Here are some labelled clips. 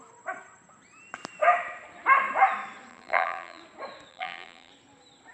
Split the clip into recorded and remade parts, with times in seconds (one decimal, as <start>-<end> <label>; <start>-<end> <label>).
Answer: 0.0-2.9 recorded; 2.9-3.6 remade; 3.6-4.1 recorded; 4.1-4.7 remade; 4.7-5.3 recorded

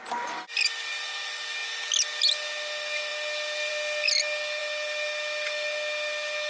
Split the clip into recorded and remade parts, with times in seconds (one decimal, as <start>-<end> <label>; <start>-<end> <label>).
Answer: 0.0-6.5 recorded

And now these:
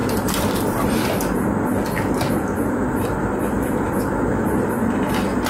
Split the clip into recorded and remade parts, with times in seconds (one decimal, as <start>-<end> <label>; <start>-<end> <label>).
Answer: 0.0-1.0 remade; 1.0-5.5 recorded

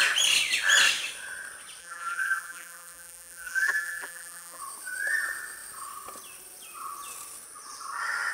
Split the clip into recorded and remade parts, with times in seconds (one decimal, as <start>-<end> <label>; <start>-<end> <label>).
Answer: 0.0-1.8 recorded; 1.8-4.6 remade; 4.6-8.3 recorded